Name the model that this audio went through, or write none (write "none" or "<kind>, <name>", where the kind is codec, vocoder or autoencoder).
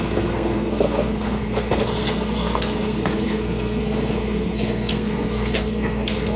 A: codec, SNAC